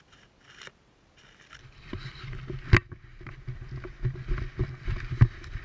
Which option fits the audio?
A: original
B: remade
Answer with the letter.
A